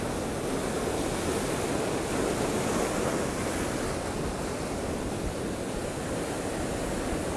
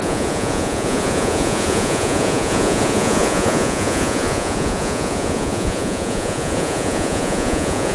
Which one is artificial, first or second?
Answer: second